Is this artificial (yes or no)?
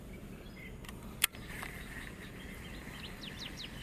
no